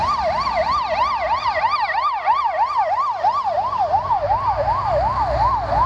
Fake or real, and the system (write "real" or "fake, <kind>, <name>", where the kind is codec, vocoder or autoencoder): real